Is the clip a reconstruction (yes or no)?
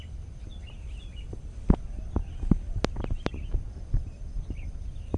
no